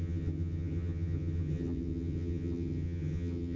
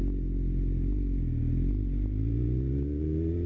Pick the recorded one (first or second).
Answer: second